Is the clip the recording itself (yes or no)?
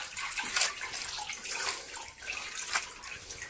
yes